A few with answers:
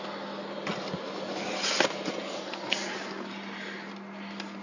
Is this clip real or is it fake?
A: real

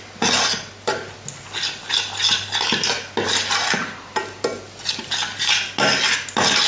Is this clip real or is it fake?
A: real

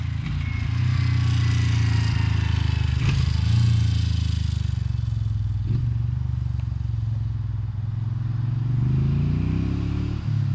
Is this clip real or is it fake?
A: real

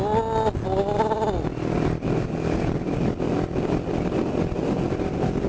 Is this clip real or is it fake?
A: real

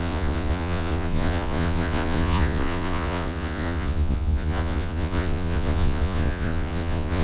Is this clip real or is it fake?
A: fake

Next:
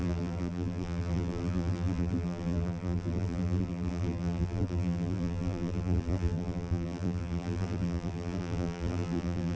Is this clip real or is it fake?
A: fake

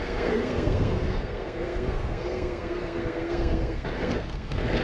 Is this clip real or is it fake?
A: fake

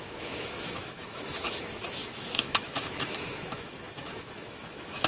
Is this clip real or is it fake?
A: fake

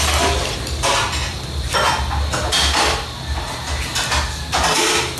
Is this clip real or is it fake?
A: real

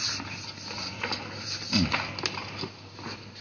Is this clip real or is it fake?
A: real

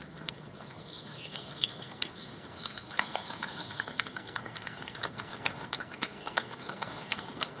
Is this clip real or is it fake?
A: fake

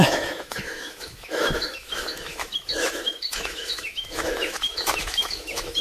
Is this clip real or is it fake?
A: fake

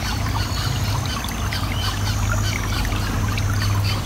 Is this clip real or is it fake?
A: real